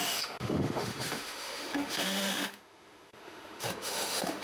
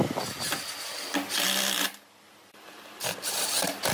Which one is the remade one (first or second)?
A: first